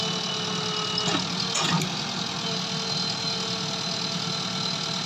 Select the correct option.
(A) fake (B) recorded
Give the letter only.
B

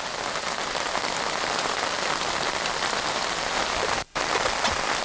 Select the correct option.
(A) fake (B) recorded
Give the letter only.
B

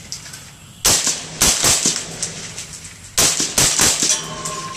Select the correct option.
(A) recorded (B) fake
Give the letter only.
A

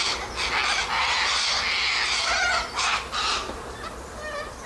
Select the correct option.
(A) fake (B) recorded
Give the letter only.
B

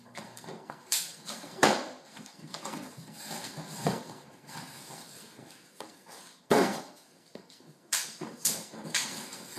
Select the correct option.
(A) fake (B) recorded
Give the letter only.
A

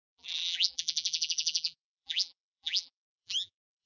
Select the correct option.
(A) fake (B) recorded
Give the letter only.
A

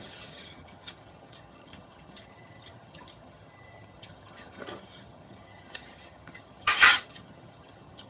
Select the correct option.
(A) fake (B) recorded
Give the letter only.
A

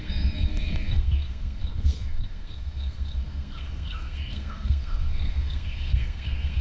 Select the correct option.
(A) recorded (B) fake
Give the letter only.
B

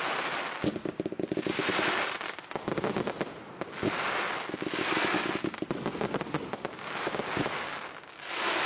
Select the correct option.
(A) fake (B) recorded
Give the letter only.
B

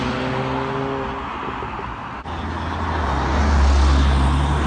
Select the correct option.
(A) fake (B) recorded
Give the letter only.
B